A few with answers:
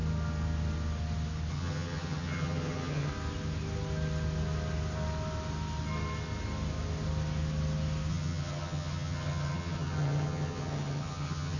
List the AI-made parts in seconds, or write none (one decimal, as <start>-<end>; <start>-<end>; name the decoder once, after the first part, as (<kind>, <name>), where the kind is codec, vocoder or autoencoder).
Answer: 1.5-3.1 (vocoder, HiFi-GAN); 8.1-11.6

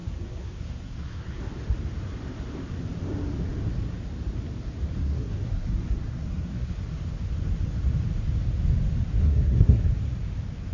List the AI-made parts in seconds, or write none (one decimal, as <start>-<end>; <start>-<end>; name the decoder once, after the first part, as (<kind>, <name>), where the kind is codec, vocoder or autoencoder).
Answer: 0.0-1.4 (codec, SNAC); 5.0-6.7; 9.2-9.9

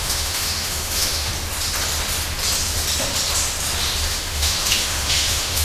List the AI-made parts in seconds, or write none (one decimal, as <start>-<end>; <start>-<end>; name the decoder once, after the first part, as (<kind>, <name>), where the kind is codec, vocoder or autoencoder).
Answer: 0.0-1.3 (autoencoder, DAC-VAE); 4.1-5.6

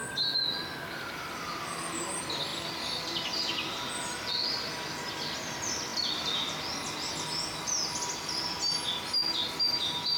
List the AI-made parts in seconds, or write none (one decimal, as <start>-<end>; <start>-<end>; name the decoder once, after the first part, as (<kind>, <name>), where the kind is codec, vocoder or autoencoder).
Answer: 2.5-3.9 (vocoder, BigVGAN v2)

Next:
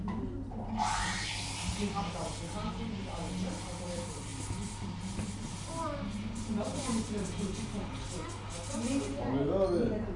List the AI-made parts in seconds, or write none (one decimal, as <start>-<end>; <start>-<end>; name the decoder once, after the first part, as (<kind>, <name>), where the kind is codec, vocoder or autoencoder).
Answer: none

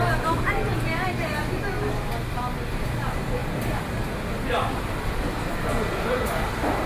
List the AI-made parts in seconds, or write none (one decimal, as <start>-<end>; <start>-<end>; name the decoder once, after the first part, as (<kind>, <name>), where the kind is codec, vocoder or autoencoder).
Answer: 0.0-1.4 (vocoder, BigVGAN v2); 2.3-6.9